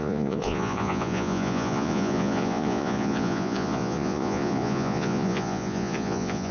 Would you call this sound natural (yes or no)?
no